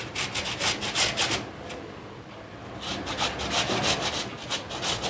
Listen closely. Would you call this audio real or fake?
real